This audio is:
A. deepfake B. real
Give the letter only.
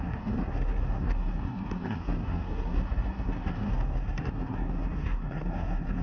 A